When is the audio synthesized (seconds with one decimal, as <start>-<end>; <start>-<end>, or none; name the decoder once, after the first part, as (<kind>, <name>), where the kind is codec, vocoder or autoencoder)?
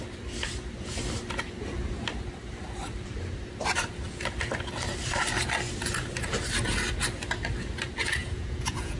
8.2-9.0 (vocoder, Vocos)